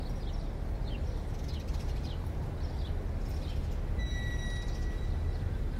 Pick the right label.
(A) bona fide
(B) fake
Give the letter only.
A